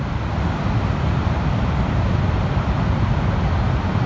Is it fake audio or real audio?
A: real